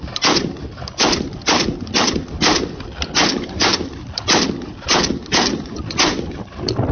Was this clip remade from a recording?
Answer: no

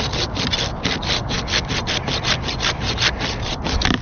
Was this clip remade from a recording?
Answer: no